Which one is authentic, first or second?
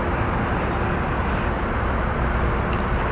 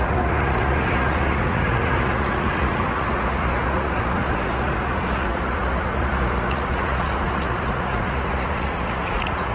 first